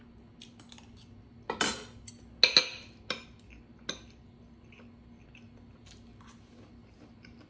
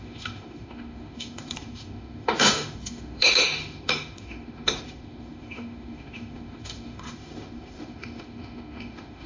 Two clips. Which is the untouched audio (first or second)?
first